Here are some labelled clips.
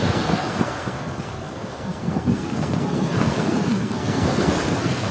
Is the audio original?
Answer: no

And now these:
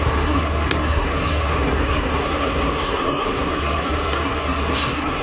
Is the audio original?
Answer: no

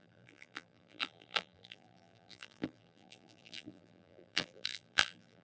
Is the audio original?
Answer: no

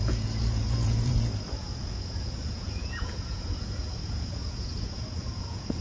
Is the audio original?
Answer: no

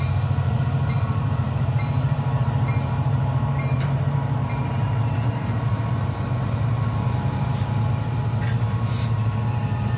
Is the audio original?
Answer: no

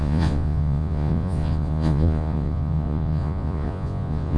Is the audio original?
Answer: no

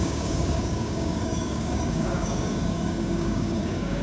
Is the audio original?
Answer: no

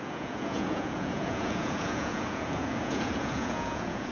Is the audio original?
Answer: no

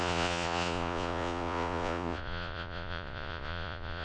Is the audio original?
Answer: no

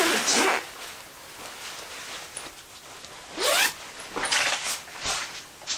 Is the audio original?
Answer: yes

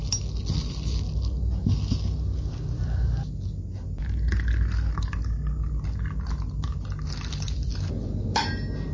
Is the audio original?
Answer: yes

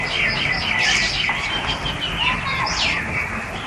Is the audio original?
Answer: yes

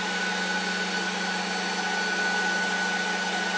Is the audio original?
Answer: yes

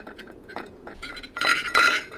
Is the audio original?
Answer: no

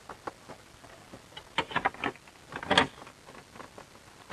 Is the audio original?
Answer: yes